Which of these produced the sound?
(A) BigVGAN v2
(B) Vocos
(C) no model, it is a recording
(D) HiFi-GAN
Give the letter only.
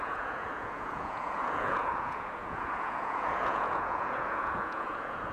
B